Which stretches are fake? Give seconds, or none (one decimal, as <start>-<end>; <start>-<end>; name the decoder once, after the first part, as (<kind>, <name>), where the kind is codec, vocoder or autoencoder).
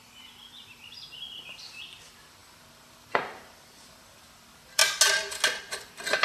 0.0-4.8 (vocoder, BigVGAN v2); 5.6-6.2